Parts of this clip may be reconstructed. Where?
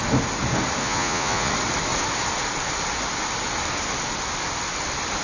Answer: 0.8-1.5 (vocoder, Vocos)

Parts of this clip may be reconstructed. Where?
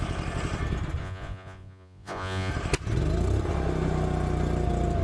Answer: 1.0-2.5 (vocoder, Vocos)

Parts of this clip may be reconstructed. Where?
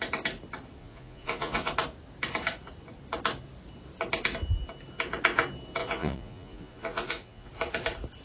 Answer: 0.8-1.7 (vocoder, Vocos); 5.8-7.5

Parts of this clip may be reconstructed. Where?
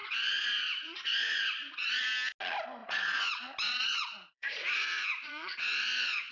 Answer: 0.0-2.0 (vocoder, Vocos); 2.8-6.3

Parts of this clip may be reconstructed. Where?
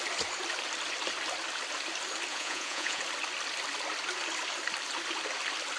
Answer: 2.3-3.0 (vocoder, Vocos)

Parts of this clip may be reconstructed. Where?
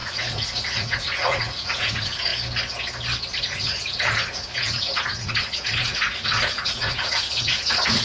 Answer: 0.0-2.3 (vocoder, Vocos); 3.4-8.0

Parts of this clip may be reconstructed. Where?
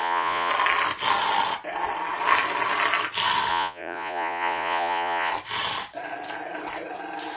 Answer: 0.0-0.5 (vocoder, Vocos); 3.5-5.3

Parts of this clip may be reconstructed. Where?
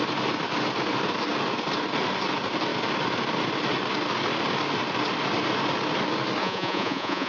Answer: 6.4-7.3 (vocoder, Vocos)